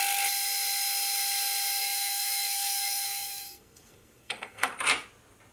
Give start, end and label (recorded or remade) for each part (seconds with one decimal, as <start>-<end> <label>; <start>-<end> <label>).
0.0-1.8 recorded; 1.8-4.7 remade; 4.7-5.5 recorded